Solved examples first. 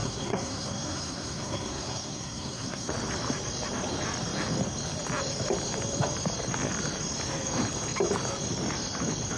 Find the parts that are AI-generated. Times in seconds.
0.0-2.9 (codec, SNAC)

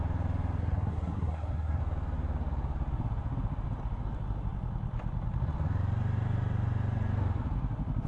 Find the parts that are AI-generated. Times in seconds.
0.6-1.8 (codec, SNAC)

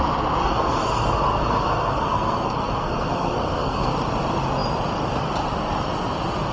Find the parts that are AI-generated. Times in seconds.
0.4-3.9 (codec, SNAC)

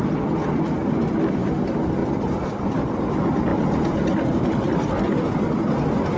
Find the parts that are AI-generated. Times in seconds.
none

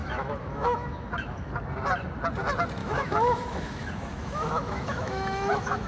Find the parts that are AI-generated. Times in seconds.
0.0-1.5 (autoencoder, DAC-VAE); 2.8-5.9

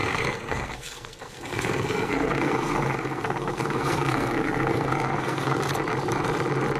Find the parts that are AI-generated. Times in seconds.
0.0-5.7 (codec, SNAC)